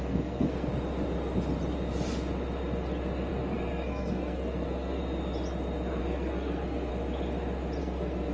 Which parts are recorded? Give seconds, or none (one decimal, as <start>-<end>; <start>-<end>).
0.7-3.3; 5.0-6.0; 6.9-7.8